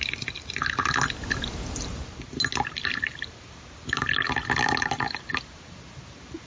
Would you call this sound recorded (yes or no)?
yes